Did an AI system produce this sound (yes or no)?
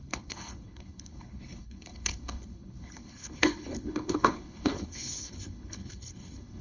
yes